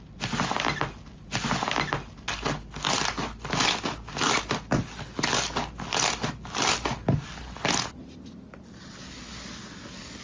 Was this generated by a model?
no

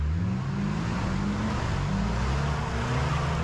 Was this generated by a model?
no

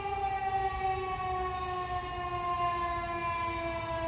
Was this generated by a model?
no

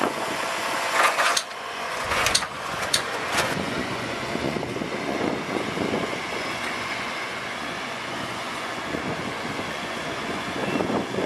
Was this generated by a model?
yes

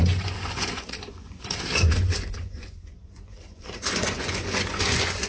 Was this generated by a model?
yes